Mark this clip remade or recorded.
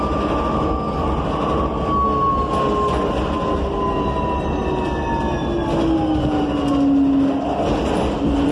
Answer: recorded